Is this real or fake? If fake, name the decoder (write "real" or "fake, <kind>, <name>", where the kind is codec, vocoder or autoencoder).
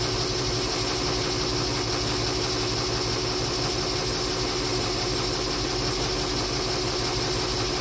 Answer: real